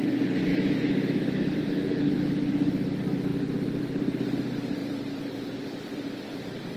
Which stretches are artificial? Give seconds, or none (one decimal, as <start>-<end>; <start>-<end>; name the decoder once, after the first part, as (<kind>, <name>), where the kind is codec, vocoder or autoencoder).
0.5-2.2 (autoencoder, DAC-VAE)